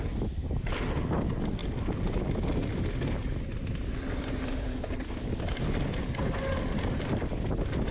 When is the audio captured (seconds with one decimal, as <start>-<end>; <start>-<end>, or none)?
0.0-1.6; 2.1-7.9